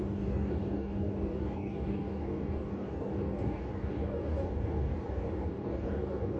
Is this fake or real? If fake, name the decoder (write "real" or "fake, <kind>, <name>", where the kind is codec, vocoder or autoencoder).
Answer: fake, codec, DAC